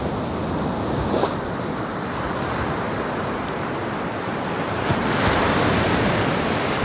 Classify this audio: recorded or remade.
remade